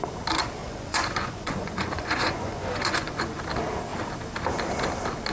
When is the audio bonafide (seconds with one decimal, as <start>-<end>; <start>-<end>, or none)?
0.0-0.6; 3.4-5.3